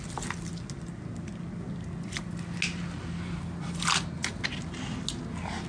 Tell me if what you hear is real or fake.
real